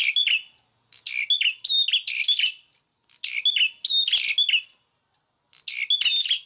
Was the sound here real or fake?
real